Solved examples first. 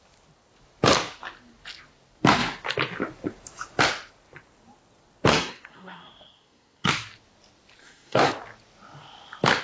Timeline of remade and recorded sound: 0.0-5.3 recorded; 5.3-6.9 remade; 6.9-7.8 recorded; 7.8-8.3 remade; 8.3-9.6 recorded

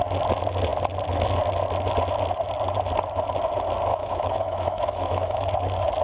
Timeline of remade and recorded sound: 0.0-3.9 recorded; 3.9-5.5 remade; 5.5-6.0 recorded

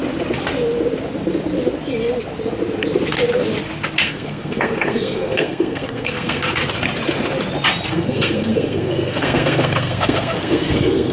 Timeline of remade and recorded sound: 0.0-4.0 recorded; 4.0-6.4 remade; 6.4-7.9 recorded; 7.9-11.1 remade

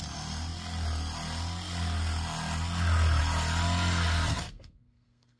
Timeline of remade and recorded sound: 0.0-4.3 recorded; 4.3-5.4 remade